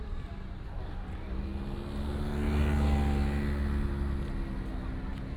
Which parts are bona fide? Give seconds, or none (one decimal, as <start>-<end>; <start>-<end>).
0.0-5.4

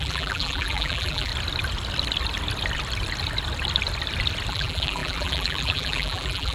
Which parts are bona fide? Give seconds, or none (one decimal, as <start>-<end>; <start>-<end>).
1.3-4.5

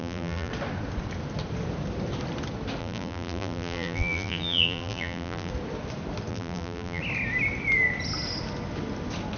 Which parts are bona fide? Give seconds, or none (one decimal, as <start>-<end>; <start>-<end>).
0.5-2.8; 5.5-6.3; 7.0-9.4

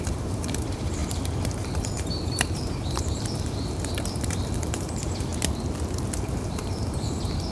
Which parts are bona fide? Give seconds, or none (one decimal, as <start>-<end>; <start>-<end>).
5.3-6.2

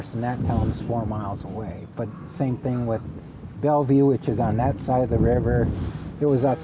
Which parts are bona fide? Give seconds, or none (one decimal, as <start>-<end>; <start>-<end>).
0.0-6.6

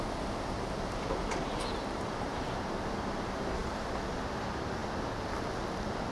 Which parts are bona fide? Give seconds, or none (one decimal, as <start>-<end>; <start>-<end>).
0.0-6.1